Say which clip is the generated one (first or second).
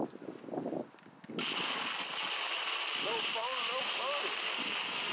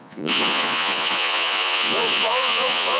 second